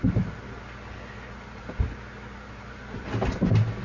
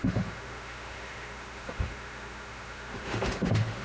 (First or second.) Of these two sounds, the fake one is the second